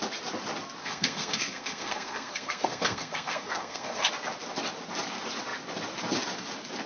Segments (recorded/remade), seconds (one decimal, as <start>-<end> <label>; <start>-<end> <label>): 0.0-0.8 recorded; 0.8-4.1 remade; 4.1-6.9 recorded